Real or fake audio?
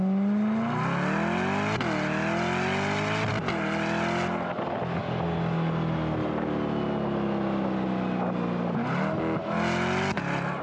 real